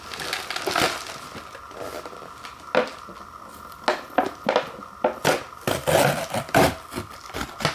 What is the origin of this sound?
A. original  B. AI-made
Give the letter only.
A